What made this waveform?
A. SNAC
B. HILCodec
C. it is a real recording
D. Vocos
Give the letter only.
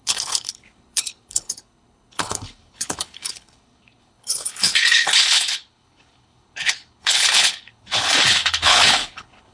B